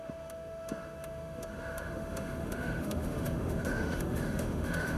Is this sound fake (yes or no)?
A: yes